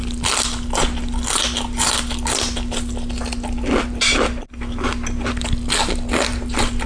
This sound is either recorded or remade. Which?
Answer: recorded